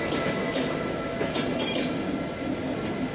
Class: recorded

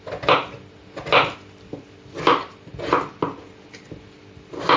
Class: recorded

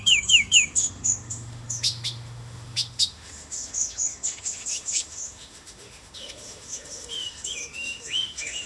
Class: remade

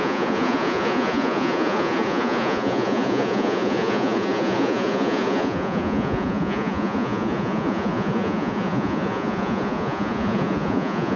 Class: remade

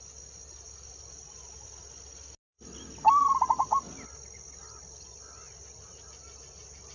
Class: recorded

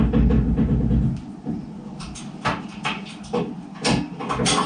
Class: recorded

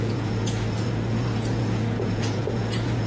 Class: remade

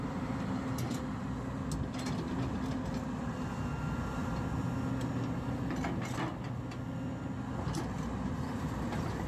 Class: recorded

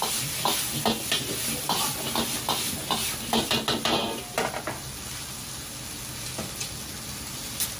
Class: recorded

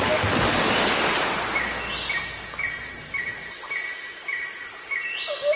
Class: recorded